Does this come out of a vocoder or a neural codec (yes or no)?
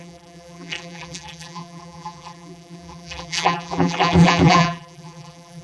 yes